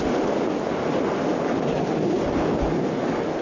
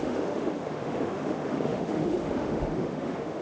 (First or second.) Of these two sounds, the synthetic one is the second